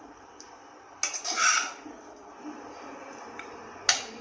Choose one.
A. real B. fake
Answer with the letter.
A